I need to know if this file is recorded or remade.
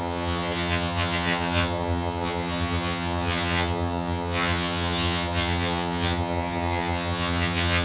remade